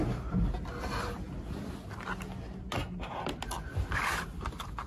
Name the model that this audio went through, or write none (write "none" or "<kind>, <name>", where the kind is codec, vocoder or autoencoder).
none